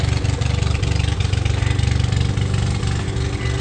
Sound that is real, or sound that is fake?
real